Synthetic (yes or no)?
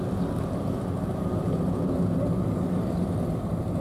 no